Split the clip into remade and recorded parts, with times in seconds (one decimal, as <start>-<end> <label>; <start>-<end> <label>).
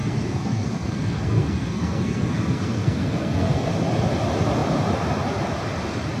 0.0-3.7 remade; 3.7-6.2 recorded